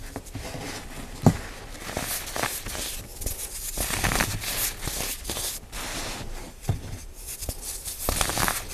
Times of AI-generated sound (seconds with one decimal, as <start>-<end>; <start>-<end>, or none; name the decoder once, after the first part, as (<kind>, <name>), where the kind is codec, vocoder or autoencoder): none